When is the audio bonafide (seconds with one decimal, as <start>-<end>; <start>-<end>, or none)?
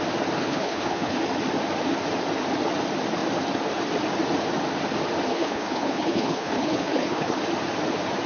0.0-0.4; 1.2-5.3; 7.4-8.3